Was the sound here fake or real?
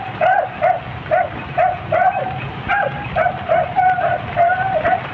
real